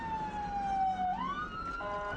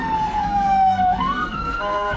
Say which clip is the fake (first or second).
second